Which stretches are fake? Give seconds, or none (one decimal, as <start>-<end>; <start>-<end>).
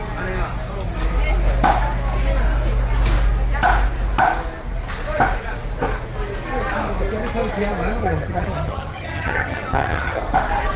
8.0-10.2